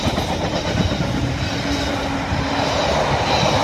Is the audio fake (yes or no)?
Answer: no